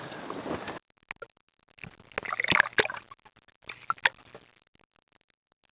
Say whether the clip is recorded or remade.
recorded